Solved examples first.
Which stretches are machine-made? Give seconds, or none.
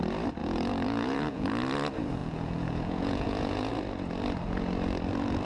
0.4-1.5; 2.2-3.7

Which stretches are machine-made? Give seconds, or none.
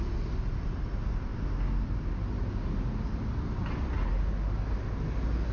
none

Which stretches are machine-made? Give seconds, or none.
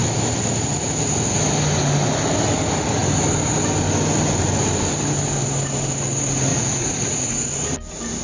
6.5-7.3